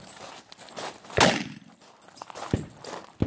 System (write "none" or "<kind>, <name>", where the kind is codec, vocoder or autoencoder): none